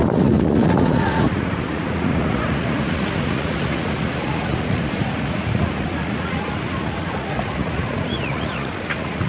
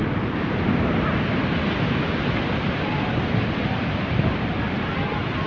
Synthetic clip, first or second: first